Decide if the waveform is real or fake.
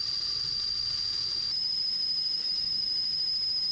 real